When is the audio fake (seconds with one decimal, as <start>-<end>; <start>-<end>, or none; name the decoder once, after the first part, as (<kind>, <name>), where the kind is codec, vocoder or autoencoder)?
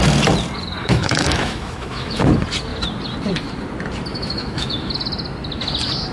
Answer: 0.8-2.2 (autoencoder, DAC-VAE); 4.1-4.9